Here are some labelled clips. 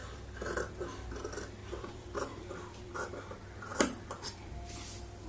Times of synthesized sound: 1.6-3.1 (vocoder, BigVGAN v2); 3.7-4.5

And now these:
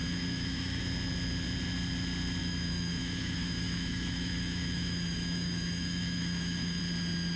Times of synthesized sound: 0.0-0.8 (autoencoder, DAC-VAE); 2.4-6.8

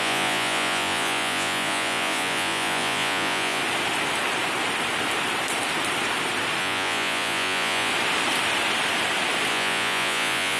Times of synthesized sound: 0.0-3.6 (vocoder, Vocos); 6.6-7.9; 9.5-10.6